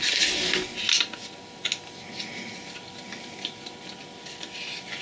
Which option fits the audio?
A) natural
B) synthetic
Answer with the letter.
A